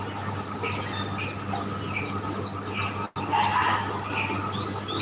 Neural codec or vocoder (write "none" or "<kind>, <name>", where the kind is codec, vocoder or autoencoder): none